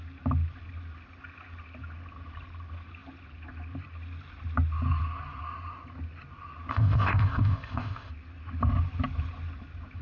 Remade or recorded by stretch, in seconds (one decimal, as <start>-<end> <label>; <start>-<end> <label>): 0.0-6.7 recorded; 6.7-8.1 remade; 8.1-10.0 recorded